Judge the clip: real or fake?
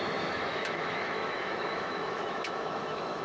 fake